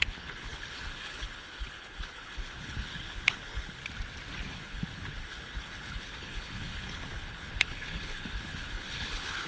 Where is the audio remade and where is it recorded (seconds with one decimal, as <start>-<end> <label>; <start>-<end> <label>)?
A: 0.0-3.8 remade; 3.8-4.5 recorded; 4.5-9.5 remade